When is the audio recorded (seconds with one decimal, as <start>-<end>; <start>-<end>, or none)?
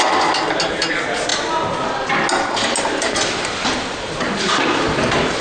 0.0-5.4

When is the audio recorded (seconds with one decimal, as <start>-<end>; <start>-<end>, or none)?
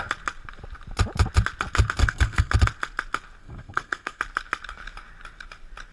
0.0-2.0; 2.5-3.4; 4.2-5.9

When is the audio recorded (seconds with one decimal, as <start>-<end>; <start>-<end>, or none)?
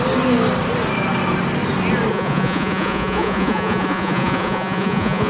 0.0-2.1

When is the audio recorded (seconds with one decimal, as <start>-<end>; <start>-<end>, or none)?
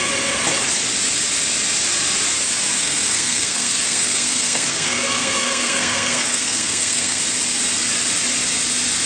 0.0-2.8; 7.2-9.0